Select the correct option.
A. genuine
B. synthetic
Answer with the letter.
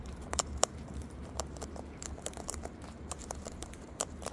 B